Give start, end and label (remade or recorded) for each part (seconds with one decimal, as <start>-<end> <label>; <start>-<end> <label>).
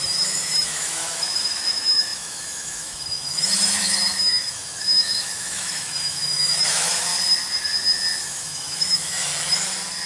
0.0-7.1 remade; 7.1-8.2 recorded; 8.2-9.3 remade; 9.3-10.1 recorded